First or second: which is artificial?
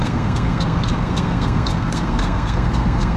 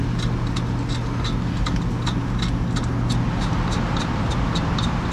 first